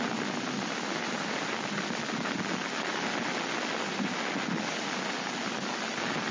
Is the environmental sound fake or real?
real